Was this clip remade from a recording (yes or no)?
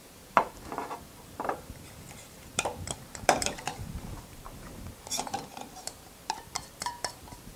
yes